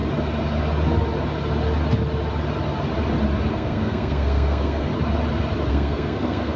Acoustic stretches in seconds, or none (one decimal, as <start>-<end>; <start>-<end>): 0.0-3.5; 4.9-5.7